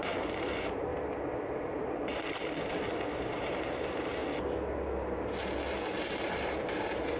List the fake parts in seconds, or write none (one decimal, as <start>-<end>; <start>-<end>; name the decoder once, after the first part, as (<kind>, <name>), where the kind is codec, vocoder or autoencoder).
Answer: 0.0-0.9 (vocoder, BigVGAN v2); 1.4-2.1; 2.7-4.2; 5.7-7.2